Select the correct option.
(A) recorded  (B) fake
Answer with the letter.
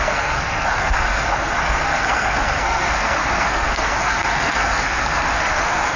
B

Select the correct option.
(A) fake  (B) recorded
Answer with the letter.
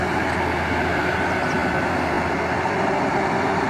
B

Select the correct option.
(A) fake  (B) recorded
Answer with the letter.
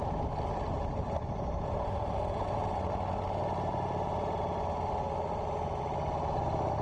B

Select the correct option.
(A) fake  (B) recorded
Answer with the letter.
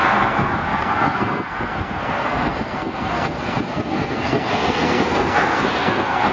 A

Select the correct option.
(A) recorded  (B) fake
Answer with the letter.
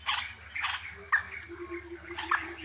A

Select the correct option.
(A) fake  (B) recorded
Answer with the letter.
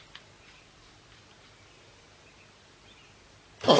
B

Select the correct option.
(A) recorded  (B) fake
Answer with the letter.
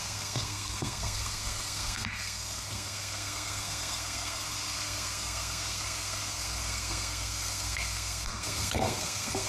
B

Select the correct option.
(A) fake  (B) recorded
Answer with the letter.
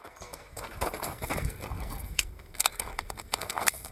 A